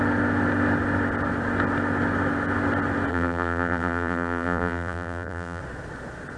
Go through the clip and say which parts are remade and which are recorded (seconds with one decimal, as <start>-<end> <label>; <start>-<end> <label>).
0.0-3.1 recorded; 3.1-5.6 remade; 5.6-6.4 recorded